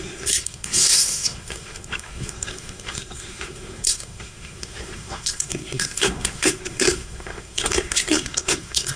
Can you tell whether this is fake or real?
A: fake